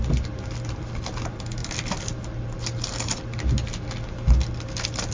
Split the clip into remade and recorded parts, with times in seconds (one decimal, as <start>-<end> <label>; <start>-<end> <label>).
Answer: 0.0-5.1 recorded